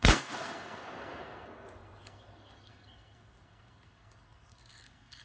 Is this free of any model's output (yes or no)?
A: no